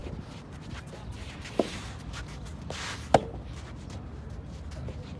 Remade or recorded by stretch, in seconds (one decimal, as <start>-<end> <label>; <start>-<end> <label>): 0.0-0.8 remade; 0.8-5.2 recorded